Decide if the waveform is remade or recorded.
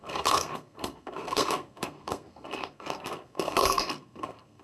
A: remade